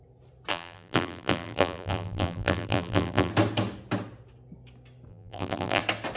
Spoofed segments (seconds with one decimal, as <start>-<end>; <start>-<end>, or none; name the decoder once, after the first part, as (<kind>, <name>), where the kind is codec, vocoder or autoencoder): 0.5-3.3 (vocoder, BigVGAN v2); 5.1-5.8